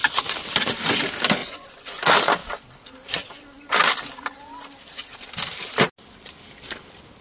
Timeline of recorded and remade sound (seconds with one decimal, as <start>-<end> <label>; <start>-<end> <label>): 0.0-1.4 recorded; 1.4-2.0 remade; 2.0-7.2 recorded